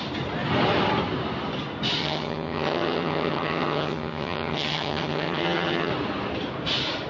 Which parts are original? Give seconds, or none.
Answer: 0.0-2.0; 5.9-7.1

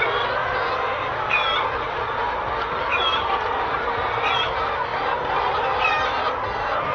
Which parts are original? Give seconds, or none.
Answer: 0.0-6.9

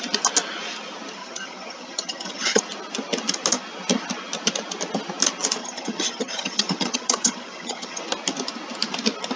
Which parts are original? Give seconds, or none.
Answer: 0.0-1.2; 2.6-5.6; 8.0-9.4

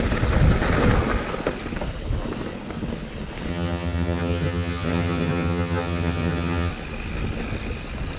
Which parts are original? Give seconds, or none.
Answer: 0.0-3.5; 6.7-8.2

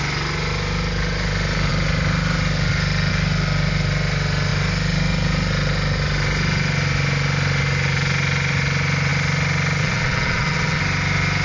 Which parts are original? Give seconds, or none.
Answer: 0.0-9.8; 10.8-11.4

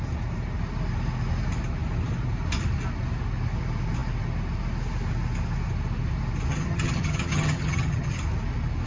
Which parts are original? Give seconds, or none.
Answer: 0.0-6.5; 8.2-8.9